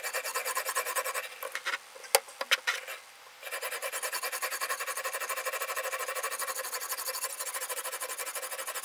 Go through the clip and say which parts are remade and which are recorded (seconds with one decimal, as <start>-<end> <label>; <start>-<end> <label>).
0.0-8.8 recorded